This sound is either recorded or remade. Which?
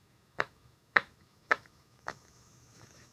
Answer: remade